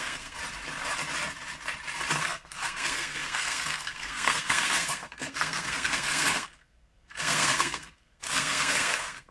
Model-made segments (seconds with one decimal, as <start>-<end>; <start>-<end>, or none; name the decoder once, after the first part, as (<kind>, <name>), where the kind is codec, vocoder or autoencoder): 0.0-0.4 (codec, SNAC); 2.2-9.3

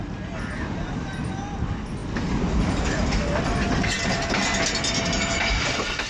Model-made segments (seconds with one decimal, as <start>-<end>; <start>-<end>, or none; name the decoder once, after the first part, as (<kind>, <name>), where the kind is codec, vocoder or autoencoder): none

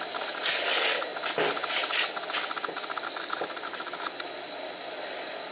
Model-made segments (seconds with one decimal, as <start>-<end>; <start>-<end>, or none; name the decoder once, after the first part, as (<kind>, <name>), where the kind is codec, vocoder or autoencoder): none

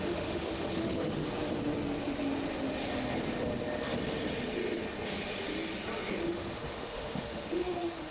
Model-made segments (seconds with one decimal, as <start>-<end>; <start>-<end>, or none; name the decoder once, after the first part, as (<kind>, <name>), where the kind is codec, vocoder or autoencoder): 0.0-1.2 (autoencoder, DAC-VAE); 6.1-8.1

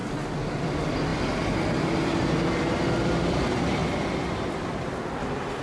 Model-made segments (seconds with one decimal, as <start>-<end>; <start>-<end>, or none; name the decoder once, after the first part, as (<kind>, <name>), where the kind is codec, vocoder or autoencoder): 0.5-5.6 (vocoder, BigVGAN v2)

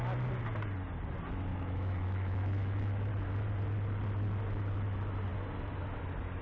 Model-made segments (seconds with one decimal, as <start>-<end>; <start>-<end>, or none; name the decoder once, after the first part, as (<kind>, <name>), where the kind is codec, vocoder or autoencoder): 1.5-3.1 (autoencoder, DAC-VAE)

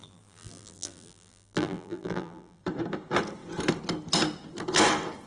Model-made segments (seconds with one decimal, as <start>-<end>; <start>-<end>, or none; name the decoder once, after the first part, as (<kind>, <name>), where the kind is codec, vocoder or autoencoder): 0.0-2.6 (vocoder, BigVGAN v2)